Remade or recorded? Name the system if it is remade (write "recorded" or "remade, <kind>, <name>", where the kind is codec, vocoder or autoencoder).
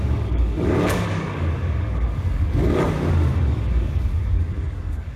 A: remade, codec, DAC